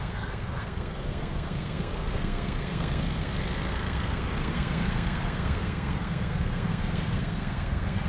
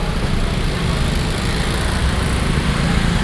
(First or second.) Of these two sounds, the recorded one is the second